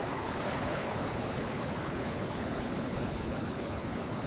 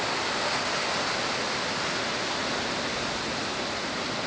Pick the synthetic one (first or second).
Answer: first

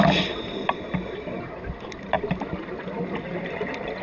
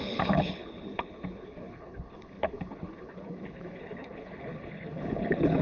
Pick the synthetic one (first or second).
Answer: second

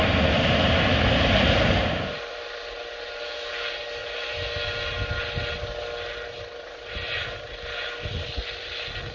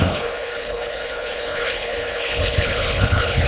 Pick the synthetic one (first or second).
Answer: second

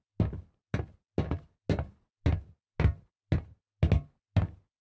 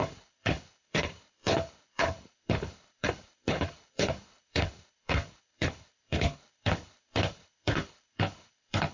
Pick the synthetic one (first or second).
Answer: second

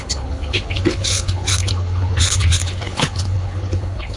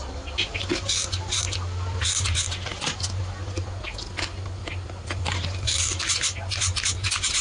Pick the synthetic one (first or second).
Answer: first